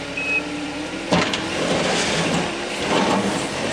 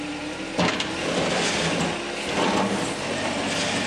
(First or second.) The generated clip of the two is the first